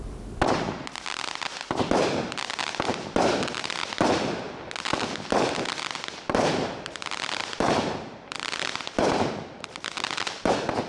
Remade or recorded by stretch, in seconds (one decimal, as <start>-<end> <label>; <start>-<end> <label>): 0.0-7.4 recorded; 7.4-10.5 remade; 10.5-10.9 recorded